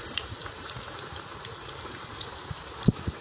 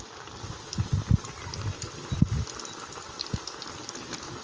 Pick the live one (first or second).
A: second